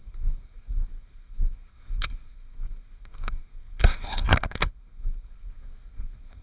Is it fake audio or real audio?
fake